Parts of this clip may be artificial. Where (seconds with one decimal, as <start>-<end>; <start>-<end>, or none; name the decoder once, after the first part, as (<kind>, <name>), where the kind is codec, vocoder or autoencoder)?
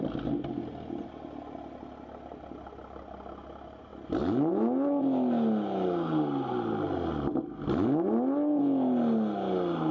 none